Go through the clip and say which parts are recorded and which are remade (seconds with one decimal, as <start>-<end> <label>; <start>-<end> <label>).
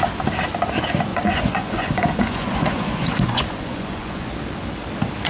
0.0-1.1 recorded; 1.1-4.3 remade; 4.3-5.3 recorded